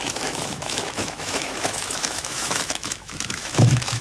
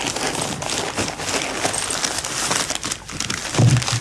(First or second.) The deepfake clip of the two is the first